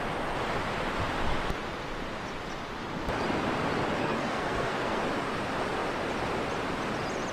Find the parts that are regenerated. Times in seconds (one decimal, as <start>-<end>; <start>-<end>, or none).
4.0-5.0